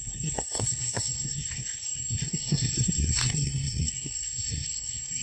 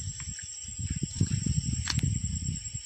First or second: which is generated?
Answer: first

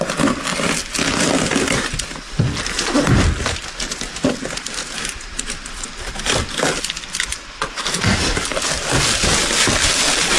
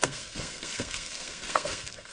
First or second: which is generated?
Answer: second